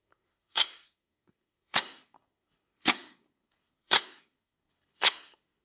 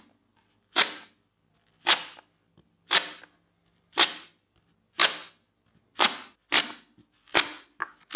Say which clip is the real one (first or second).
second